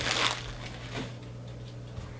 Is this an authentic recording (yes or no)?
yes